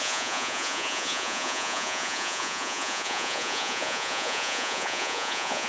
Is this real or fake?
fake